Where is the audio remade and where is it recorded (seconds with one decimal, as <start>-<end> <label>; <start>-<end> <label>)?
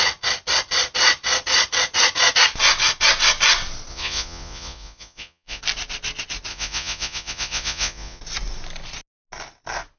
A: 0.0-3.9 recorded; 3.9-5.6 remade; 5.6-6.5 recorded; 6.5-8.2 remade; 8.2-10.0 recorded